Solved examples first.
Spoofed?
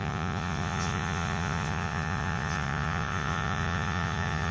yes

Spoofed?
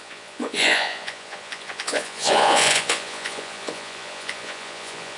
yes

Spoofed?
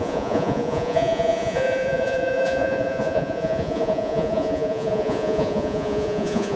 yes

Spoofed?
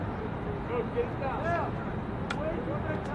no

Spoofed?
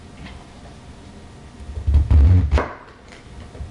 no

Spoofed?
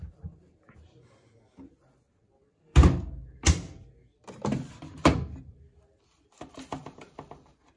no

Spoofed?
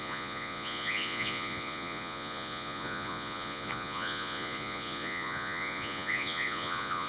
yes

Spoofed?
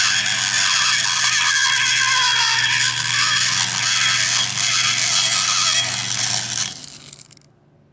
no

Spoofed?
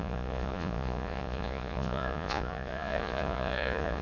yes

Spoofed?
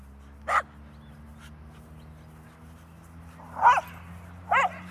no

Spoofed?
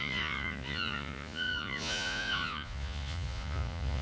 yes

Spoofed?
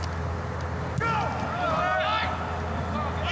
no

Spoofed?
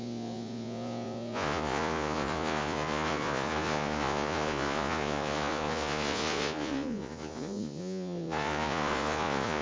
yes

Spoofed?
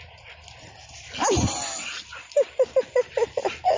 no